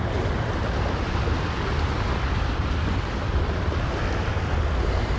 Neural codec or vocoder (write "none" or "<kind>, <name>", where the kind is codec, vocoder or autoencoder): none